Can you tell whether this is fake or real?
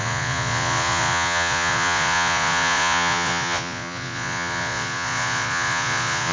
fake